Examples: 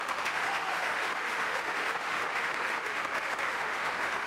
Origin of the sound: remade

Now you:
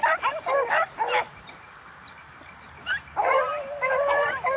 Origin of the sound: remade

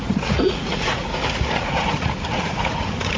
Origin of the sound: remade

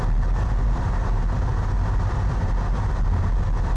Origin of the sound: recorded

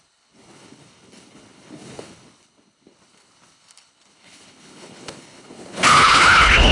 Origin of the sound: remade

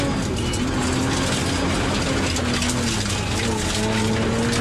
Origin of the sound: recorded